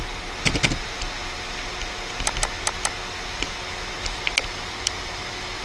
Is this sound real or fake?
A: real